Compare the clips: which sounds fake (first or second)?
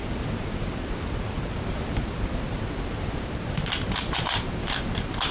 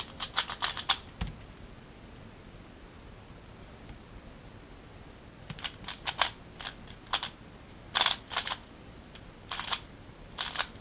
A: first